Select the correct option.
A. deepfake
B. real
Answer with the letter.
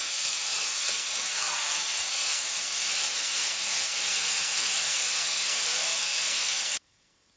A